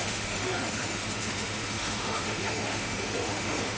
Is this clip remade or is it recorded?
remade